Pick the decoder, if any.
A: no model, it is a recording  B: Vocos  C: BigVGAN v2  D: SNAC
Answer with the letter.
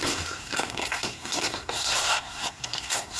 D